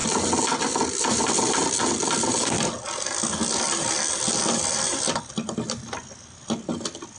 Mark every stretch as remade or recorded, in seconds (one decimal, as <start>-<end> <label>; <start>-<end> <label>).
0.0-7.2 recorded